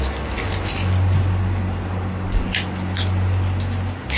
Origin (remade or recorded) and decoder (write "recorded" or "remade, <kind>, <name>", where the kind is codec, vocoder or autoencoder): recorded